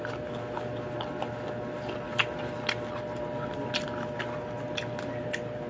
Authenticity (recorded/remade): recorded